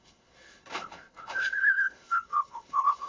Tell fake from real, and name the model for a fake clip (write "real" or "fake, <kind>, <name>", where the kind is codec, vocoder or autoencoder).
fake, codec, HILCodec